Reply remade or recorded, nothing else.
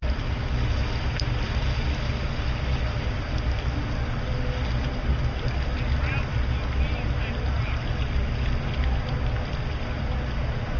recorded